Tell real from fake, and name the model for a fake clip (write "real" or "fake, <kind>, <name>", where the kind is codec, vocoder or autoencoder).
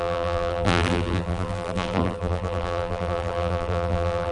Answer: fake, vocoder, BigVGAN v2